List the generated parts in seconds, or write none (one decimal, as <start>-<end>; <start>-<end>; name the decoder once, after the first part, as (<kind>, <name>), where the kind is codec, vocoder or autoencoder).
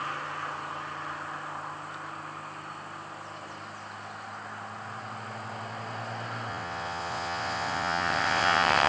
6.5-8.9 (vocoder, WaveNeXt)